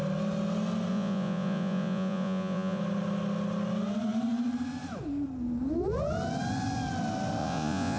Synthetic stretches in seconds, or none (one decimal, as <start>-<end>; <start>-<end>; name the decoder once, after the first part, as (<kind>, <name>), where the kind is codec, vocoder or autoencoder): 0.9-2.8 (vocoder, Vocos); 7.4-8.0